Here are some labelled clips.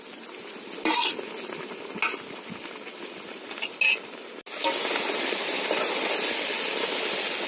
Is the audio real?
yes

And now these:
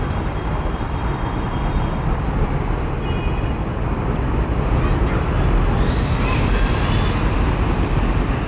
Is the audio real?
yes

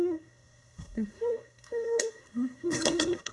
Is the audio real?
no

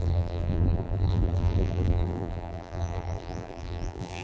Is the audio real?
no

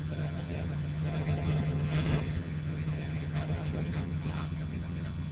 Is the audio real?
no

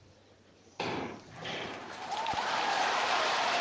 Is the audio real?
no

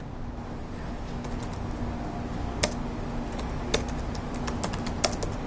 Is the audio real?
yes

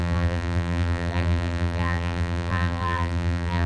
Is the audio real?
no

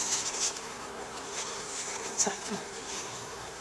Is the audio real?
no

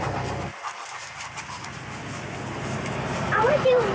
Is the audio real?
yes